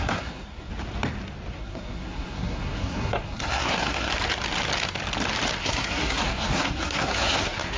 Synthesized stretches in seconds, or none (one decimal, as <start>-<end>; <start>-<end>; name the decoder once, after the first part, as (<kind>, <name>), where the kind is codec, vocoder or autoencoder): 0.0-0.7 (codec, SNAC); 1.6-4.1; 5.6-7.8